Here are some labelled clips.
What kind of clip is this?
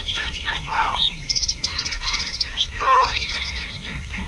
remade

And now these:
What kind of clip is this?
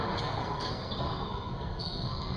remade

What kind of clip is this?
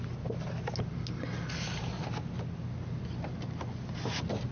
recorded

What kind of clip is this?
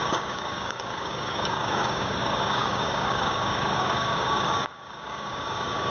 remade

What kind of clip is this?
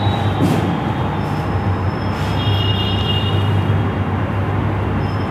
recorded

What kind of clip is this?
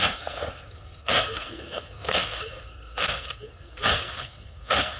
remade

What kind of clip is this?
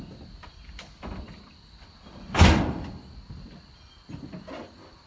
recorded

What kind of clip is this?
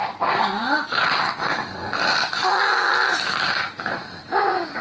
recorded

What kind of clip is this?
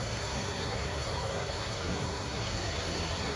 remade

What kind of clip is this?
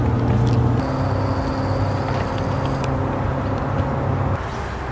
recorded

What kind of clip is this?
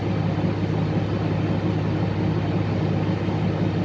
recorded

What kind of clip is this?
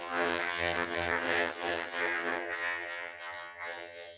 remade